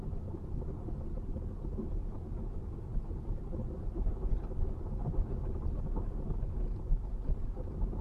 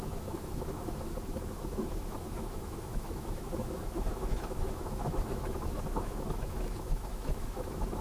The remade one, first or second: second